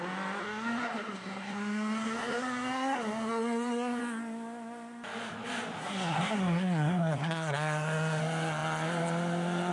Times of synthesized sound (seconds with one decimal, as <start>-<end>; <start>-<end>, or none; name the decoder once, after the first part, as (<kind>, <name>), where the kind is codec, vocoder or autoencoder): 0.4-4.0 (codec, SNAC); 5.8-8.2